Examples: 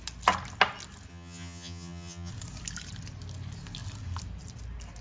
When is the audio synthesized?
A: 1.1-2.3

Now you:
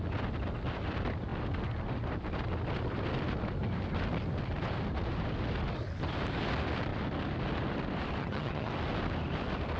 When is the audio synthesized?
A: 8.2-8.7

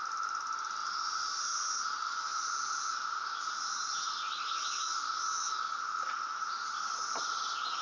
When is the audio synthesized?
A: none

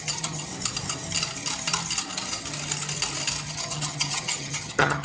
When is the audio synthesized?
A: 0.0-0.5; 3.5-5.0

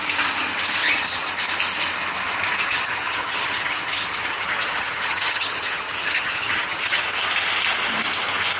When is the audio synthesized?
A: 0.8-1.3; 2.6-7.0